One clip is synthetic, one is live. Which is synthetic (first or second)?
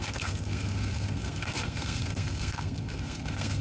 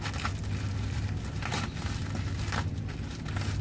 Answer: first